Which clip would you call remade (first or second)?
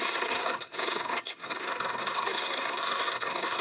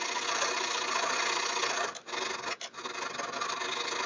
first